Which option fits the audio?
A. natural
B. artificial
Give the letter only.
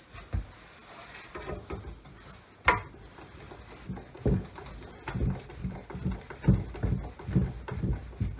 A